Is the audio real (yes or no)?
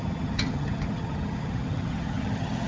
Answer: no